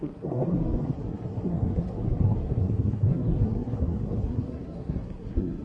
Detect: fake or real fake